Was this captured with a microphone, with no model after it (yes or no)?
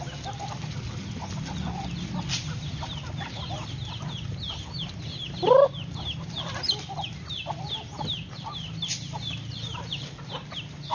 yes